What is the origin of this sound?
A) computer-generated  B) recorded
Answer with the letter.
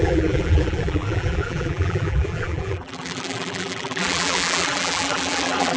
A